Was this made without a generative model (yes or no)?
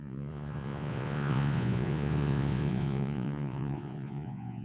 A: no